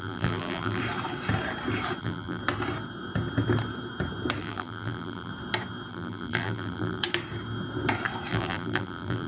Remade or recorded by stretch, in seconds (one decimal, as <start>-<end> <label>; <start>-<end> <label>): 0.0-0.8 remade; 0.8-2.0 recorded; 2.0-2.4 remade; 2.4-4.4 recorded; 4.4-5.3 remade; 5.3-5.9 recorded; 5.9-7.0 remade; 7.0-8.3 recorded; 8.3-9.3 remade